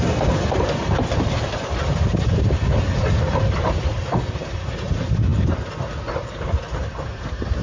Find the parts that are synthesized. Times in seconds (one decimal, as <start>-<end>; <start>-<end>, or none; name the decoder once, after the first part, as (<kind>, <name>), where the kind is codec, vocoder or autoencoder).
none